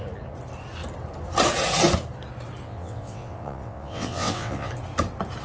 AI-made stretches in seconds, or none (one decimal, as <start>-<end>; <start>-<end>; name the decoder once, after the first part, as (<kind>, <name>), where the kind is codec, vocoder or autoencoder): 2.6-4.7 (vocoder, WaveNeXt)